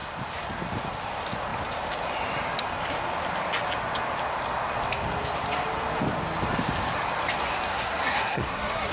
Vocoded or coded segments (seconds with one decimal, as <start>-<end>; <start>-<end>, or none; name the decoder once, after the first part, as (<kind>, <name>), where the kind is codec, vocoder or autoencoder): 7.7-8.9 (codec, SNAC)